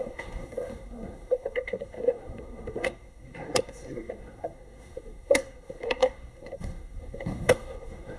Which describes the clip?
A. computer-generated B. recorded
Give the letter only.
A